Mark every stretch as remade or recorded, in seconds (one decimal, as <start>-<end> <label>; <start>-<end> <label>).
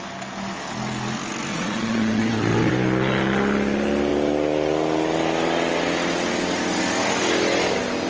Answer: 0.0-1.5 recorded; 1.5-2.7 remade; 2.7-8.1 recorded